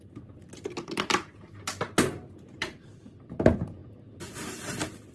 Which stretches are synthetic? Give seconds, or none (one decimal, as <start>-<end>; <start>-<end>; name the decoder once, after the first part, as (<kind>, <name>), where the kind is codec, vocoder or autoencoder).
0.0-3.8 (vocoder, BigVGAN v2)